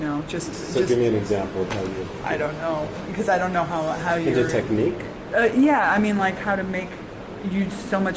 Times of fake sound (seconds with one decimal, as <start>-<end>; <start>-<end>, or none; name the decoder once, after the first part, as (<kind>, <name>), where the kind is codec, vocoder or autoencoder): 0.8-4.5 (autoencoder, DAC-VAE)